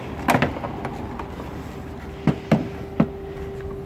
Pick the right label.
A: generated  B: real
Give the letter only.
B